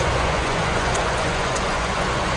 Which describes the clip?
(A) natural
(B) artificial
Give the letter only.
B